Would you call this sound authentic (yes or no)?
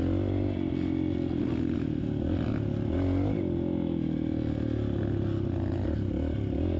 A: yes